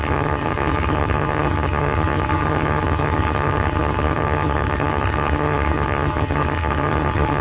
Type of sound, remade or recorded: remade